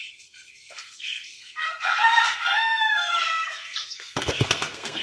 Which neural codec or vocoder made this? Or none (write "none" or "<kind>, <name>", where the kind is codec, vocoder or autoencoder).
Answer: codec, SNAC